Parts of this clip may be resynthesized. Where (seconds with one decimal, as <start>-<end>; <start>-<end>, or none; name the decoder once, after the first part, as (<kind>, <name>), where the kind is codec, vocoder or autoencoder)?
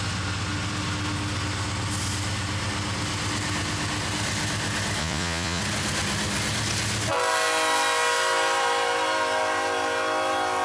5.0-5.6 (vocoder, Vocos)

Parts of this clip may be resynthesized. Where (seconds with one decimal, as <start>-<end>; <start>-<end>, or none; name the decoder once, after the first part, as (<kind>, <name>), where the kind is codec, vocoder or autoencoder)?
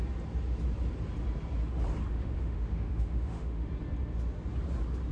2.1-3.7 (autoencoder, DAC-VAE)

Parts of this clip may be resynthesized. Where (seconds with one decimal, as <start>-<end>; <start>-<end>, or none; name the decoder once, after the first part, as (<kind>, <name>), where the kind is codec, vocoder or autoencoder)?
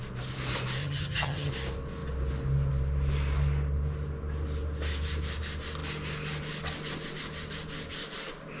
0.8-1.5 (vocoder, HiFi-GAN)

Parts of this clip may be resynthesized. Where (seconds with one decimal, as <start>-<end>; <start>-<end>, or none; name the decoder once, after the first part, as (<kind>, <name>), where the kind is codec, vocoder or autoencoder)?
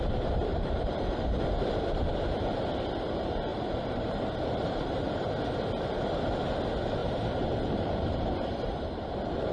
0.5-1.4 (vocoder, BigVGAN v2); 3.5-5.2; 7.0-9.0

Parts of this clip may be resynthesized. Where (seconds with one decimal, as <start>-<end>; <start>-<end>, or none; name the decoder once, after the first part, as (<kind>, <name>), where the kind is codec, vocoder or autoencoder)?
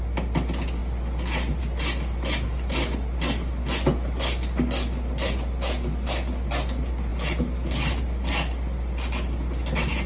none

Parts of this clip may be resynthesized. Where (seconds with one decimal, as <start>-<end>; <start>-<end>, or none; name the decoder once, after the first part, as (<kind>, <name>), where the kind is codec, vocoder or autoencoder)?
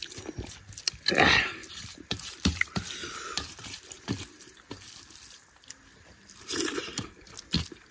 1.6-4.9 (vocoder, BigVGAN v2)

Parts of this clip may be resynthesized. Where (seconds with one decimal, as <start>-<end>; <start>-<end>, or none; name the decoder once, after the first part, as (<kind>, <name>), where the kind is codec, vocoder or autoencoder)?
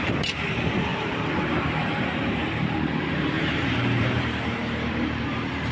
0.0-0.9 (vocoder, BigVGAN v2); 2.3-5.7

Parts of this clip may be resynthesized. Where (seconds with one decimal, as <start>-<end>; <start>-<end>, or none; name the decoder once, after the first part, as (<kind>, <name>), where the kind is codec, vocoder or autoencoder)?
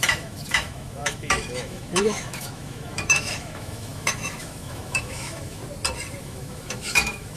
0.0-5.6 (autoencoder, DAC-VAE); 6.2-7.4